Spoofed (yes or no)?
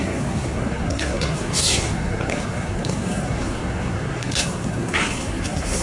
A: yes